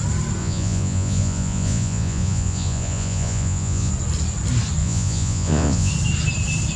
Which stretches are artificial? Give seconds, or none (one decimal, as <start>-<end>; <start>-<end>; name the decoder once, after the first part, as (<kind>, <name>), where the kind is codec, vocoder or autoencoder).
0.4-3.9 (vocoder, Vocos); 4.8-5.9